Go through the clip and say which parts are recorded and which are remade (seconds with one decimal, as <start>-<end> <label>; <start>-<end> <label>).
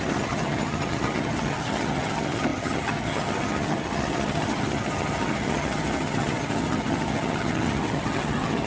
0.0-8.7 remade